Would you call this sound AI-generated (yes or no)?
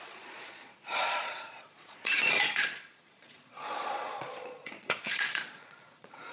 yes